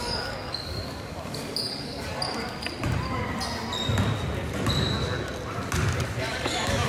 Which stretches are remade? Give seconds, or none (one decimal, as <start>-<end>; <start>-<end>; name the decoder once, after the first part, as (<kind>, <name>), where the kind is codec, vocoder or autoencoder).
0.0-2.1 (codec, DAC); 6.2-6.9